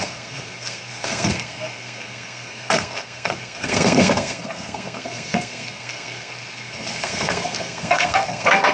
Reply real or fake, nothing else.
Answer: fake